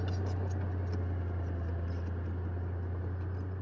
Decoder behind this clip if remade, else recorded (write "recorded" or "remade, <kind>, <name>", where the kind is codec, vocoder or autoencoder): recorded